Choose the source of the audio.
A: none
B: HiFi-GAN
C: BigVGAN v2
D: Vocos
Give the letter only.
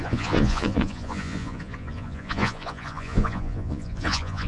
D